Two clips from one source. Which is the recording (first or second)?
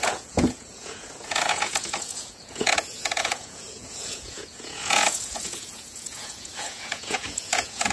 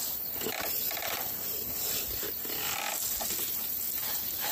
second